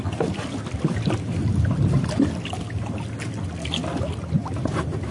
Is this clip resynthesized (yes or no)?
no